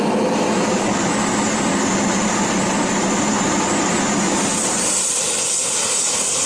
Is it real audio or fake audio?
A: real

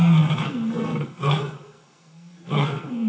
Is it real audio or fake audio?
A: fake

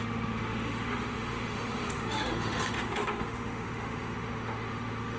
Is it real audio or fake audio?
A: fake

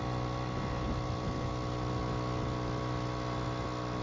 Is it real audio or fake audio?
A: real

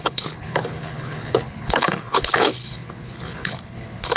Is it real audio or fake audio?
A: fake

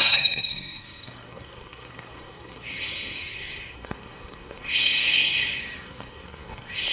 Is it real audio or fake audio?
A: fake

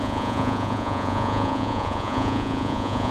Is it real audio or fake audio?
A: fake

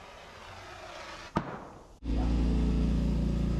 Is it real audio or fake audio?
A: real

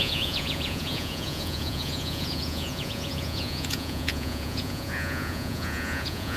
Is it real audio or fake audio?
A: fake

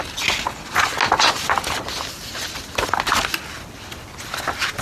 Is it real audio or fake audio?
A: real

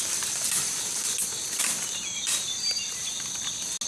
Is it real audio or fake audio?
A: real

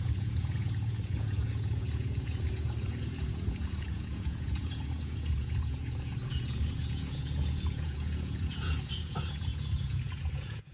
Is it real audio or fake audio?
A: fake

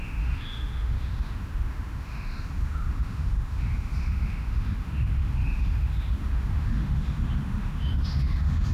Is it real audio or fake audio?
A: fake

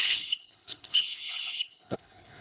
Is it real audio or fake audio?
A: fake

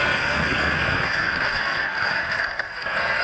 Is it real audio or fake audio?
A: fake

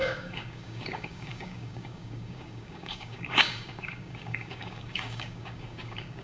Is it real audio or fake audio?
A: fake